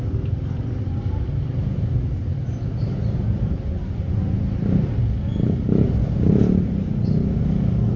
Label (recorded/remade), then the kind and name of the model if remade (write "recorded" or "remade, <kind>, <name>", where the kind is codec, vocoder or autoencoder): recorded